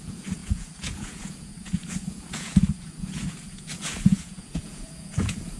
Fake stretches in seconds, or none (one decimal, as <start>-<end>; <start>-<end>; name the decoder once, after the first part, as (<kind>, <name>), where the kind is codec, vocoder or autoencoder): 0.0-5.6 (vocoder, Vocos)